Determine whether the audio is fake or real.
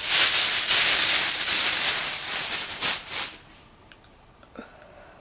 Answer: real